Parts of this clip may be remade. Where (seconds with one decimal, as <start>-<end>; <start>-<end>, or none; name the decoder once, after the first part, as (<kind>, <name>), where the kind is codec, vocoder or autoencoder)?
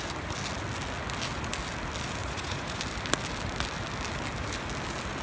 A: 2.2-2.8 (vocoder, Vocos)